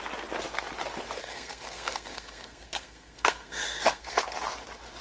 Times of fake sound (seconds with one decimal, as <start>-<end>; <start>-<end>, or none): 1.2-4.2